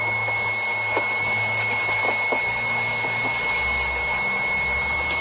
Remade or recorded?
recorded